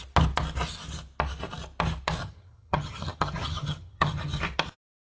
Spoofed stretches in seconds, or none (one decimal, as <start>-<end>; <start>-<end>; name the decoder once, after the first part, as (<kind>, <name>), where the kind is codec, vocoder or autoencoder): 2.2-4.4 (vocoder, HiFi-GAN)